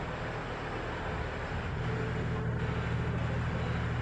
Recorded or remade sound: recorded